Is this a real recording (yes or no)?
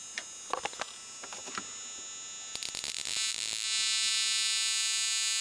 yes